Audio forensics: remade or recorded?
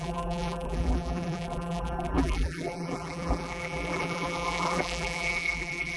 remade